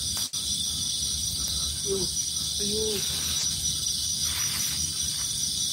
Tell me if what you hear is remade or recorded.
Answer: recorded